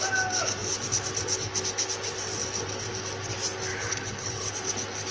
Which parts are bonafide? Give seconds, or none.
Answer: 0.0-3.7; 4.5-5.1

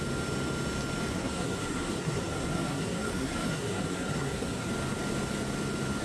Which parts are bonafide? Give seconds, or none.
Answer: 0.0-1.1; 4.7-6.0

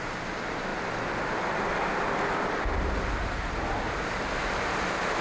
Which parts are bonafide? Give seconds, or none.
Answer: 0.0-5.2

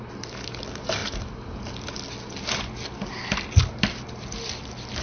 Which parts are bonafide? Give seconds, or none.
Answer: 0.0-5.0